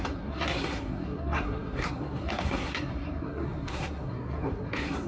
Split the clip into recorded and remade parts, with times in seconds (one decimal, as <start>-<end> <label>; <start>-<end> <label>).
0.0-5.1 remade